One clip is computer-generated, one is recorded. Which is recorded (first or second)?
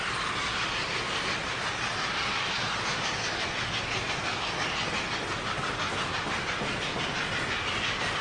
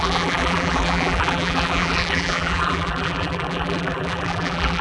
first